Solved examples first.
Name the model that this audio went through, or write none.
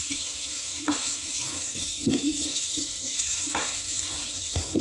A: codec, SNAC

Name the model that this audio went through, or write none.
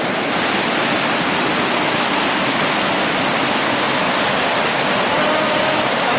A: none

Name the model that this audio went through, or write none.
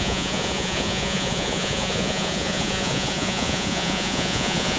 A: vocoder, Vocos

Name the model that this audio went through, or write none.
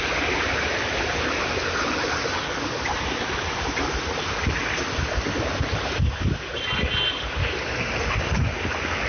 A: none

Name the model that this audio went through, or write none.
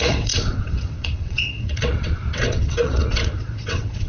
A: vocoder, WaveNeXt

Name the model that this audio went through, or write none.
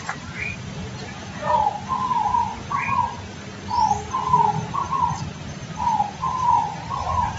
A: none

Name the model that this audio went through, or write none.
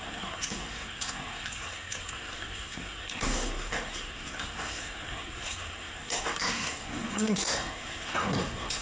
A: codec, SNAC